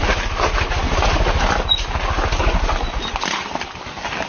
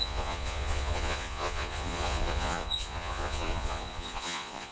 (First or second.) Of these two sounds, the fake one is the second